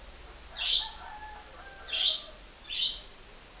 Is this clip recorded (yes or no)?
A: yes